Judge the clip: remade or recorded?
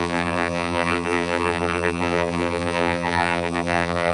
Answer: remade